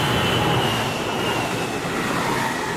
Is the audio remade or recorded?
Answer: recorded